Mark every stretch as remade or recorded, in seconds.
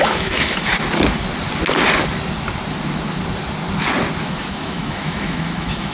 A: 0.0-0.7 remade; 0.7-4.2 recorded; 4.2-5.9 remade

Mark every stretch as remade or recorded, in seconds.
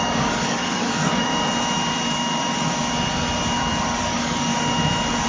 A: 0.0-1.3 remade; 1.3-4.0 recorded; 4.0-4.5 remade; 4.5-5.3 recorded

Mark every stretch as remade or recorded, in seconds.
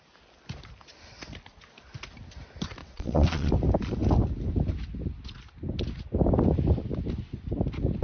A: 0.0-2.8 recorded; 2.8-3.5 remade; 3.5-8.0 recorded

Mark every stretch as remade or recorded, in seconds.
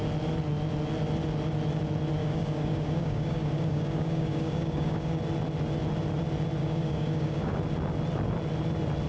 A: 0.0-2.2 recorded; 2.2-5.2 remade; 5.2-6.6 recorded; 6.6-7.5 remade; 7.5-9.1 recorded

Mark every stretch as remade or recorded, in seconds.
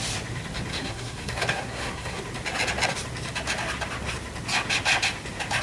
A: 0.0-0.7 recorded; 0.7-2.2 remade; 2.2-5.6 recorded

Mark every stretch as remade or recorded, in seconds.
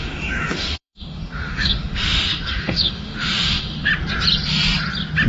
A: 0.0-3.9 remade; 3.9-5.3 recorded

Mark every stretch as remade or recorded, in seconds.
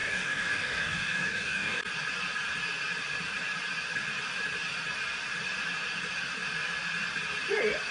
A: 0.0-1.8 remade; 1.8-7.9 recorded